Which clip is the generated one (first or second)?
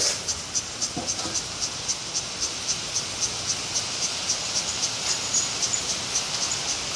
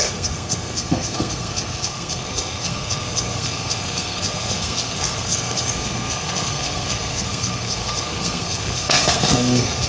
second